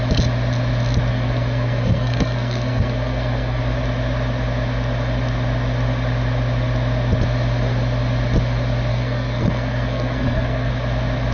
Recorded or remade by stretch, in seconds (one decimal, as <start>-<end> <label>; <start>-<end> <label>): 0.0-1.1 recorded; 1.1-3.6 remade; 3.6-8.9 recorded; 8.9-10.7 remade; 10.7-11.3 recorded